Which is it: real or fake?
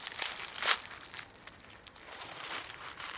real